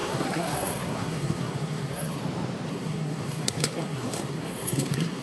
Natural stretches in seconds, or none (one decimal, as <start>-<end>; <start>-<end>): 2.2-2.7